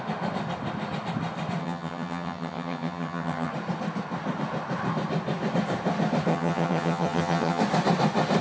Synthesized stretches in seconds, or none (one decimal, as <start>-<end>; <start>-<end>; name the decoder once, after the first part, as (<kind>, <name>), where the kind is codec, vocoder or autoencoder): 1.6-3.5 (vocoder, HiFi-GAN); 6.3-7.6